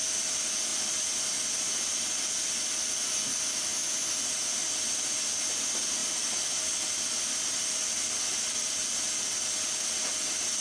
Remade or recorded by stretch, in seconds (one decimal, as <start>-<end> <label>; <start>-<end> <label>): 0.0-0.7 recorded; 0.7-3.4 remade; 3.4-6.0 recorded; 6.0-8.7 remade; 8.7-10.6 recorded